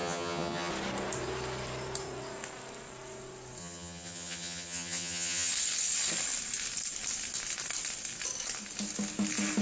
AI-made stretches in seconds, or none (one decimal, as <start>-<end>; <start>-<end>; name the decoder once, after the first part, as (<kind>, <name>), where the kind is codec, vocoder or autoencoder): 0.0-0.7 (vocoder, HiFi-GAN); 3.6-5.5